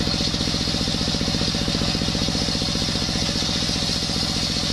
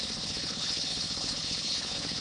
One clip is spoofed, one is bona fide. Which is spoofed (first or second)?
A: second